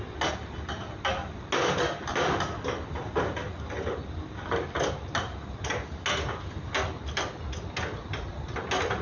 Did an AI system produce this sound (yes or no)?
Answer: no